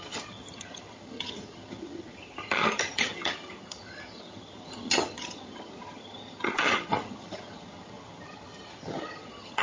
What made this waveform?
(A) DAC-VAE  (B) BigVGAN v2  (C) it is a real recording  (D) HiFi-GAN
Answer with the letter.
D